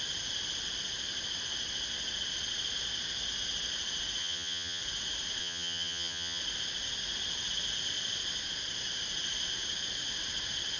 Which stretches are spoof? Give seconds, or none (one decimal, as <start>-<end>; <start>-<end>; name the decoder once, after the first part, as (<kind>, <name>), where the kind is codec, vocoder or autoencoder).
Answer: 4.2-4.8 (vocoder, HiFi-GAN); 5.4-6.4